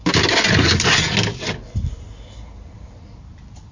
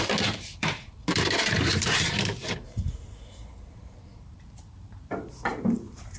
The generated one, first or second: second